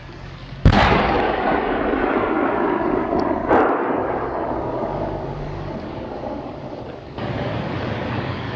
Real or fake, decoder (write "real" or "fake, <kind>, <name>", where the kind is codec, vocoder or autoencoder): fake, codec, DAC